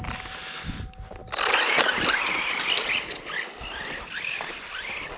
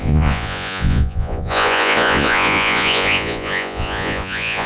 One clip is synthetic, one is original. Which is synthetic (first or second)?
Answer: second